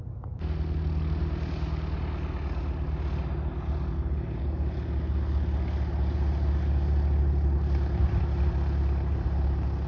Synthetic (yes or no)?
no